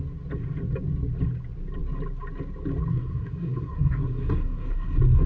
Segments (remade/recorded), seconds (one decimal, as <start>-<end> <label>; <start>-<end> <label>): 0.0-2.9 recorded; 2.9-5.3 remade